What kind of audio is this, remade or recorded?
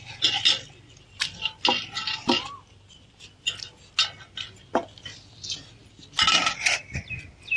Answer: recorded